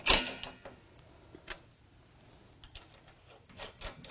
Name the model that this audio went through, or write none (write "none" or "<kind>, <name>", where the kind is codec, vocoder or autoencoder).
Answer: none